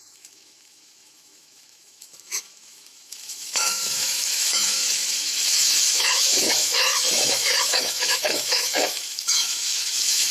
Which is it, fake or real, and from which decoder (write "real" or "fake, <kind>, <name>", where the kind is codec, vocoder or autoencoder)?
fake, autoencoder, DAC-VAE